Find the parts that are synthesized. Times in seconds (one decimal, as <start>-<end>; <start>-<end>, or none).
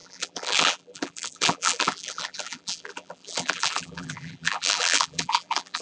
0.0-5.8